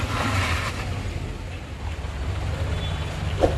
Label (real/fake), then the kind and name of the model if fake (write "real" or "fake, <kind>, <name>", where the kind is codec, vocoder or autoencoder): real